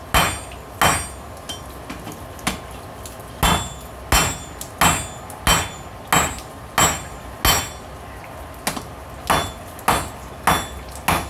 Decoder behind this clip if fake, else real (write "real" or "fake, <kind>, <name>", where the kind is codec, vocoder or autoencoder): real